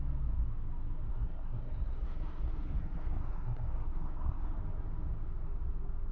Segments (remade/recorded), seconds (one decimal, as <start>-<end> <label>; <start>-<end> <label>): 0.0-1.1 recorded; 1.1-4.6 remade; 4.6-6.1 recorded